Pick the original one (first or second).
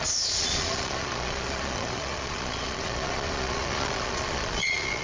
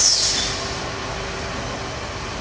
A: second